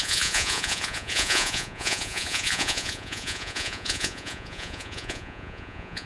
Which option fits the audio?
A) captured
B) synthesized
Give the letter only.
B